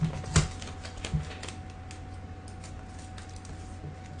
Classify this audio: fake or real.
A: real